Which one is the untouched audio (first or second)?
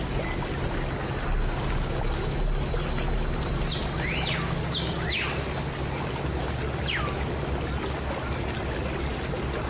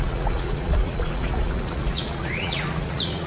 first